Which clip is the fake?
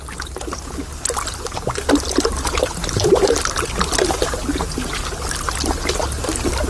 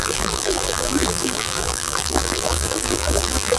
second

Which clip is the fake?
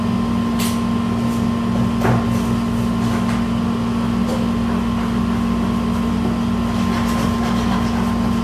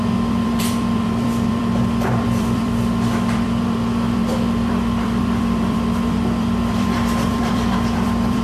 second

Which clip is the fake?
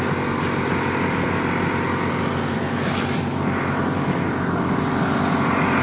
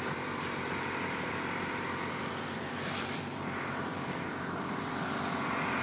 second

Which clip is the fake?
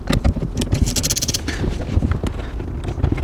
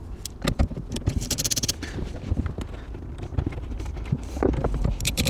second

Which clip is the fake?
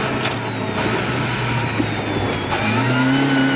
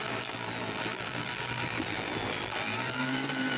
second